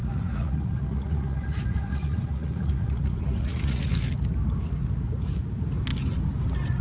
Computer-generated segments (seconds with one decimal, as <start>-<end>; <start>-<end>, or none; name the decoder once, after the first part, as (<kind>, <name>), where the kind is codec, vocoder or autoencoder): 0.0-3.9 (vocoder, Vocos)